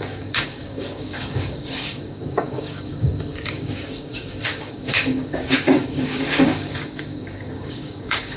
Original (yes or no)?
no